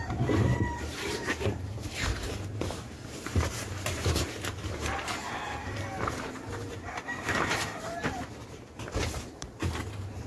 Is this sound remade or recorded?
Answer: remade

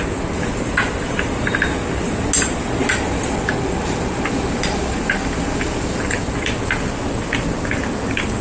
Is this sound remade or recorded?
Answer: recorded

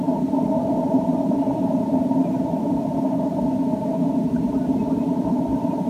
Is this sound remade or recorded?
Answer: remade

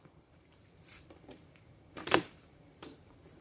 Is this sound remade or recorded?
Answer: remade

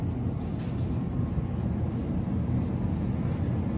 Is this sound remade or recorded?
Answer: recorded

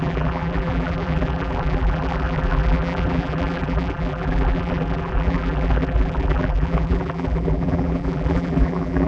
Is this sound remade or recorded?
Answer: remade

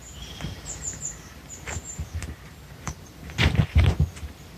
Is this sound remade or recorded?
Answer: remade